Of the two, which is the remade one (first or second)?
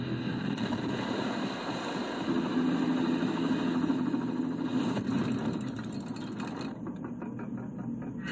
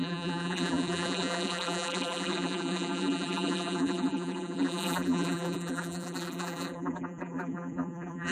second